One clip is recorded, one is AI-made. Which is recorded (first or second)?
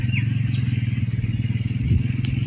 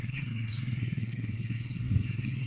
first